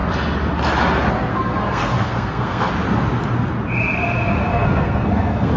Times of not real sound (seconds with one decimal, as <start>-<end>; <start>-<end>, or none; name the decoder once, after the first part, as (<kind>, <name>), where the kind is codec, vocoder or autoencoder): 1.3-2.7 (codec, SNAC); 4.5-5.6

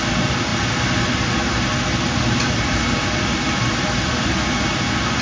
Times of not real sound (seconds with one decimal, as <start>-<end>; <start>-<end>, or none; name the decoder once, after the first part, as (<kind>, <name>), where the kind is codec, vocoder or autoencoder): none

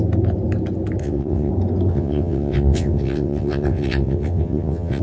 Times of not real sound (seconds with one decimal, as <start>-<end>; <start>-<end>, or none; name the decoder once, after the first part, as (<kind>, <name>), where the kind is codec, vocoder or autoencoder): 1.0-1.5 (vocoder, WaveNeXt); 1.9-5.0

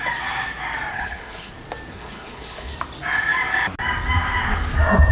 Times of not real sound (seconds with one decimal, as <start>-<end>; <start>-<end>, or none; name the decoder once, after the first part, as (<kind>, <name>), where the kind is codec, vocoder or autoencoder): 0.9-1.5 (codec, HILCodec); 1.9-2.7